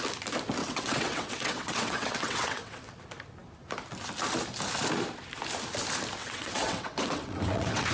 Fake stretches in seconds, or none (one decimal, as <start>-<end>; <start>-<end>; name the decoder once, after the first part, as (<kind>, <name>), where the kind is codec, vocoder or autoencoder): 0.6-2.9 (vocoder, WaveNeXt); 6.2-7.9